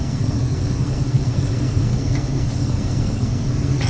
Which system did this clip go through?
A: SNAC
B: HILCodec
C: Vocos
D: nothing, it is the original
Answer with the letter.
A